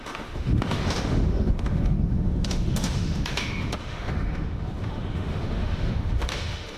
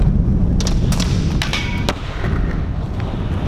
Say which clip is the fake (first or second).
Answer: first